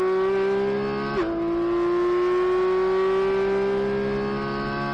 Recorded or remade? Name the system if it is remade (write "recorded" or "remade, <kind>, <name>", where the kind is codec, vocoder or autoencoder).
recorded